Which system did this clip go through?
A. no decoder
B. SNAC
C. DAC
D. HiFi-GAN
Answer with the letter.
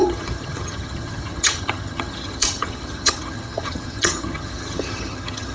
D